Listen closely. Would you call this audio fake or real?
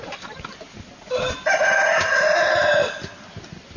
real